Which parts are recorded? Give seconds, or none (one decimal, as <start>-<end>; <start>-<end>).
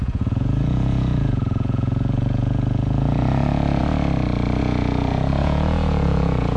3.8-4.6